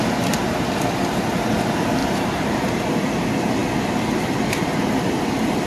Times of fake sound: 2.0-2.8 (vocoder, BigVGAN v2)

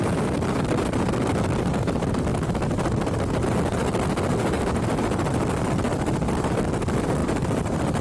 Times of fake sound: 7.2-8.0 (vocoder, BigVGAN v2)

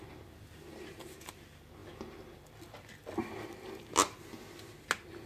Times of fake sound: none

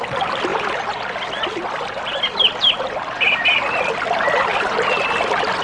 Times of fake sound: 0.5-3.9 (vocoder, BigVGAN v2); 4.5-5.6